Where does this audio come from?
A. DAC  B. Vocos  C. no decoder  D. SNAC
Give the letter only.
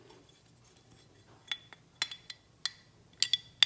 C